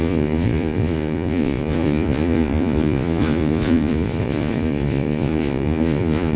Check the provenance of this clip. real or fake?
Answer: fake